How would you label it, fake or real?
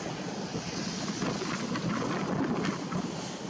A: real